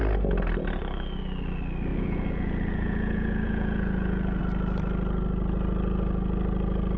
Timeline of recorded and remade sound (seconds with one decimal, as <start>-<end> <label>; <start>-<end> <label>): 0.0-1.9 recorded; 1.9-4.4 remade; 4.4-7.0 recorded